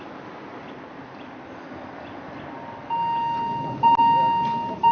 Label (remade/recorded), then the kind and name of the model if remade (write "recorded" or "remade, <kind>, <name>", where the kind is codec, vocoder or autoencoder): recorded